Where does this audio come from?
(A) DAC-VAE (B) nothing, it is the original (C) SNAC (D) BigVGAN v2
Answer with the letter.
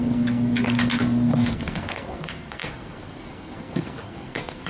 C